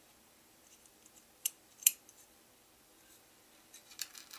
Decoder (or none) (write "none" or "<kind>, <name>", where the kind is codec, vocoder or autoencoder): vocoder, BigVGAN v2